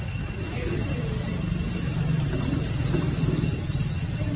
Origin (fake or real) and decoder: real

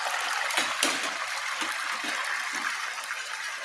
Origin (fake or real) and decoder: real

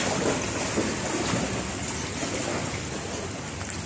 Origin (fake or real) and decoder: real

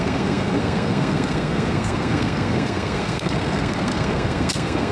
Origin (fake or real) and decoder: fake, codec, SNAC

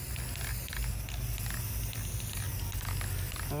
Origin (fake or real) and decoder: real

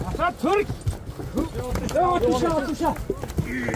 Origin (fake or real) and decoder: real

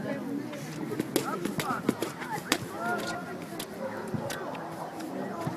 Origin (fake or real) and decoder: real